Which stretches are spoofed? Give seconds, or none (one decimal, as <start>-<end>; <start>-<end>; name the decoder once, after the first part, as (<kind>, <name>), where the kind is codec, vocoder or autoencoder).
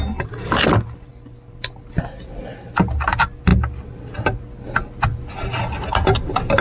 none